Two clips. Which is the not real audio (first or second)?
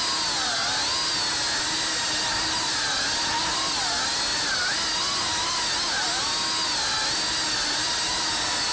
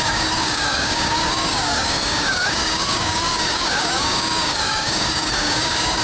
second